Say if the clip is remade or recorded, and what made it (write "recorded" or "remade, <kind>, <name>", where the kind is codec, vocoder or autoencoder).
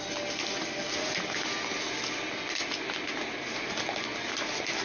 recorded